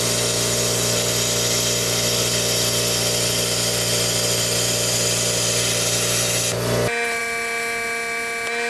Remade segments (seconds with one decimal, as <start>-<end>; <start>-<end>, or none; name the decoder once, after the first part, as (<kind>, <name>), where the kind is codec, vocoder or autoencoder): none